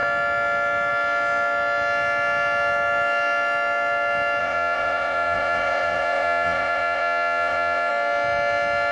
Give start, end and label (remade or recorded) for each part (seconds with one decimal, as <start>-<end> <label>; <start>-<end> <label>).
0.0-4.4 recorded; 4.4-7.9 remade; 7.9-8.9 recorded